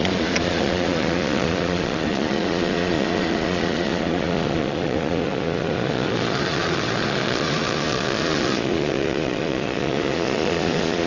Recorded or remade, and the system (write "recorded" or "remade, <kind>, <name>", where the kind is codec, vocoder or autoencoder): remade, vocoder, Vocos